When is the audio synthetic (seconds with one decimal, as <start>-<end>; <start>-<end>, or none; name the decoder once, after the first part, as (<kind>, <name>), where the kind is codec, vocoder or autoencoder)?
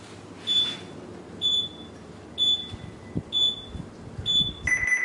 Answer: none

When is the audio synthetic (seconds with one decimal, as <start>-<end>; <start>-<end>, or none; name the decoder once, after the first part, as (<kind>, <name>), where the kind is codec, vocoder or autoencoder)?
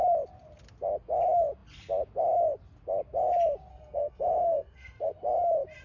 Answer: 3.7-5.1 (codec, SNAC)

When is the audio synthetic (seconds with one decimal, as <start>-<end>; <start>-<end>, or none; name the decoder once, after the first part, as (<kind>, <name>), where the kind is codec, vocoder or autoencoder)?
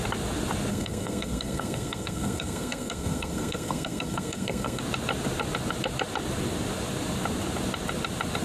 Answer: 0.7-4.8 (codec, SNAC)